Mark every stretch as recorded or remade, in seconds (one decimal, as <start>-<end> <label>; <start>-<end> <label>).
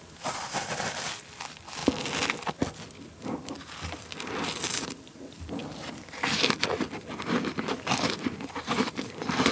0.0-1.8 remade; 1.8-2.4 recorded; 2.4-9.5 remade